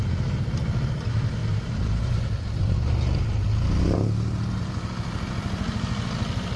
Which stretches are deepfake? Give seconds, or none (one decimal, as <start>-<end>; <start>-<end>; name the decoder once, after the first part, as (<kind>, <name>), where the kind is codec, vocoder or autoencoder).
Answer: 1.4-2.5 (vocoder, BigVGAN v2)

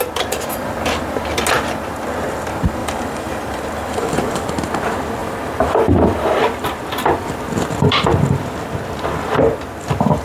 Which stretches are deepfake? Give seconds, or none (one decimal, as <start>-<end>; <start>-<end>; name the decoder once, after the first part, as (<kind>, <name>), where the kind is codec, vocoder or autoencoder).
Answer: 2.8-4.5 (vocoder, BigVGAN v2); 5.2-6.4

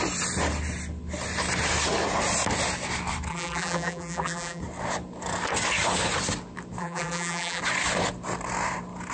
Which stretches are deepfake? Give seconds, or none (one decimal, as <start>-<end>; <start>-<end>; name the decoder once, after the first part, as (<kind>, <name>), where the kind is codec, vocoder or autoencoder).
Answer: 3.3-4.6 (vocoder, BigVGAN v2); 6.8-7.6

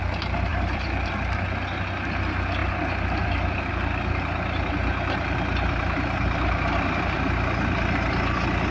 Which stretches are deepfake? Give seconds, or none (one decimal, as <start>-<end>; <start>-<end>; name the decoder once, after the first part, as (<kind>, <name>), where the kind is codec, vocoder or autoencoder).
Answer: 0.5-1.1 (vocoder, BigVGAN v2); 2.6-3.6

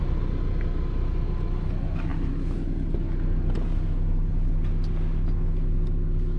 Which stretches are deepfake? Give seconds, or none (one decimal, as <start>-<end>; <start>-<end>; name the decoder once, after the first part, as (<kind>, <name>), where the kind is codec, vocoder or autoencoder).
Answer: none

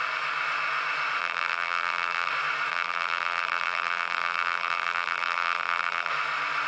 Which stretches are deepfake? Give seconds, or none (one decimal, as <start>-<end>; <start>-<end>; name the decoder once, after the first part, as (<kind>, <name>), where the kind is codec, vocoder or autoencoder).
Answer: 1.2-2.3 (vocoder, BigVGAN v2); 2.7-6.1

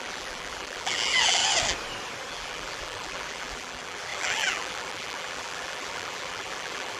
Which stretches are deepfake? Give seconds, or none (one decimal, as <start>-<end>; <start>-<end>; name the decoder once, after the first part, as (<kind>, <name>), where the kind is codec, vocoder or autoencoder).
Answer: 0.0-1.4 (vocoder, BigVGAN v2); 2.3-7.0

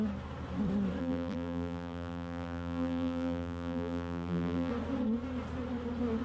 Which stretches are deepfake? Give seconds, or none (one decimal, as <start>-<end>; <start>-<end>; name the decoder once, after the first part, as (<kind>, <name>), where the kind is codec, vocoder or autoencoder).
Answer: 1.0-4.7 (vocoder, BigVGAN v2)